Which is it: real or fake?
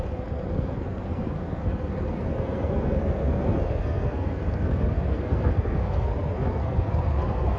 fake